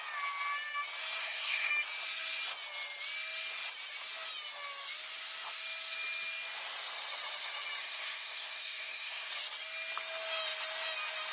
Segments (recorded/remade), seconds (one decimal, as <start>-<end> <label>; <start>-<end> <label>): 0.0-1.2 recorded; 1.2-1.7 remade; 1.7-7.8 recorded; 7.8-9.3 remade; 9.3-11.3 recorded